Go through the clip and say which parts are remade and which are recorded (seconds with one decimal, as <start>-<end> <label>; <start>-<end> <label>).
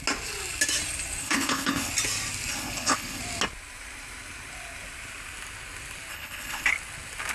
0.0-1.2 recorded; 1.2-1.9 remade; 1.9-2.5 recorded; 2.5-3.2 remade; 3.2-6.1 recorded; 6.1-6.7 remade; 6.7-7.3 recorded